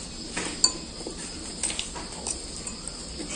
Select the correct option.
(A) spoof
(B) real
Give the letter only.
B